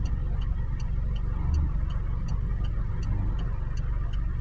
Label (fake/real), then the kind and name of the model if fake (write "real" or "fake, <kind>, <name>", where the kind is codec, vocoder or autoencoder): real